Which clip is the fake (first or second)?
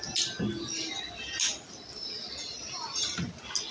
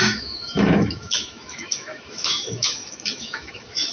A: second